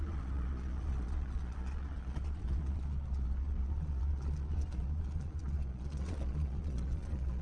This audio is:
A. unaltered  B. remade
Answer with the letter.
B